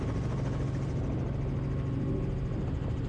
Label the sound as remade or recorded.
recorded